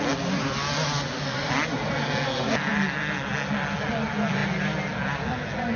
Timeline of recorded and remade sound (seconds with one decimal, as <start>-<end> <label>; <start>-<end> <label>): 0.0-5.8 recorded